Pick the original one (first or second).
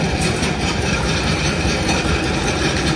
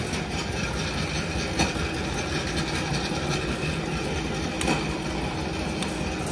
second